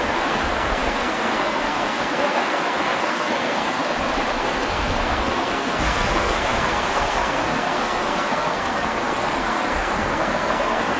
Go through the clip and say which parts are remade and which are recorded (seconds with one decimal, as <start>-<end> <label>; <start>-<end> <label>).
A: 0.0-3.8 remade; 3.8-4.3 recorded; 4.3-11.0 remade